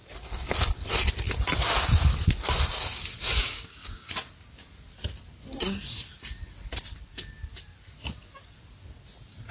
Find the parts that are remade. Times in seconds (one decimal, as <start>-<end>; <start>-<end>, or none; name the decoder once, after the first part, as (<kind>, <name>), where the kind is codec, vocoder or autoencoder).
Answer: 3.4-4.1 (codec, DAC)